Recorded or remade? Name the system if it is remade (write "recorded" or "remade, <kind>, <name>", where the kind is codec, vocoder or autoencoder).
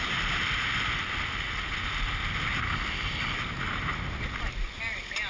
recorded